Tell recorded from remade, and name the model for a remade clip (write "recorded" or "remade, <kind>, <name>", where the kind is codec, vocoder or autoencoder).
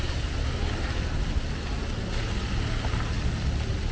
recorded